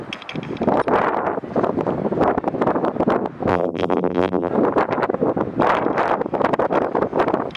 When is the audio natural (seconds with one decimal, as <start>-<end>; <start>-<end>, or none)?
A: 0.0-3.5; 4.5-7.6